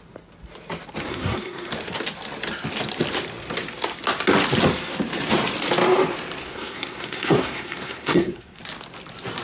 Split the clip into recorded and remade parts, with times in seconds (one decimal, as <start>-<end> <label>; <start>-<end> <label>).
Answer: 0.0-1.1 recorded; 1.1-1.7 remade; 1.7-6.4 recorded; 6.4-8.6 remade; 8.6-9.4 recorded